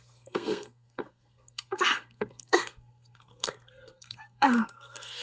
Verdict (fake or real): fake